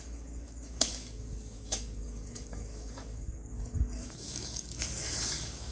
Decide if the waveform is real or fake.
fake